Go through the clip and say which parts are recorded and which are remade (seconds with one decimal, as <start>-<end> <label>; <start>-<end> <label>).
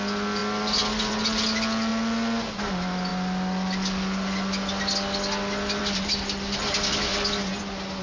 0.0-8.0 recorded